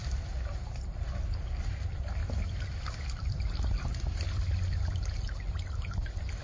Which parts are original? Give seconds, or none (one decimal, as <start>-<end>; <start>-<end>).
0.0-6.4